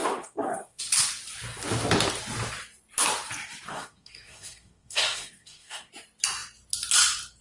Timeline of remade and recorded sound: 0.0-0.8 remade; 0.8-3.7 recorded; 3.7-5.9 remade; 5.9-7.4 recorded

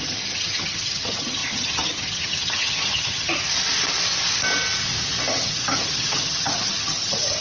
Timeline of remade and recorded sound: 0.0-3.3 remade; 3.3-5.3 recorded; 5.3-7.4 remade

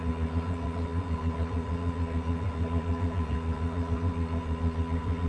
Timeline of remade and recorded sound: 0.0-5.3 remade

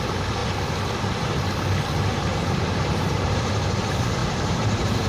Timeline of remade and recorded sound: 0.0-2.3 recorded; 2.3-3.6 remade; 3.6-4.2 recorded; 4.2-5.1 remade

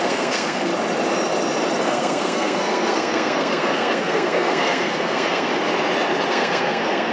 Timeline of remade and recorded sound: 0.0-0.7 remade; 0.7-1.8 recorded; 1.8-5.5 remade; 5.5-6.3 recorded; 6.3-7.1 remade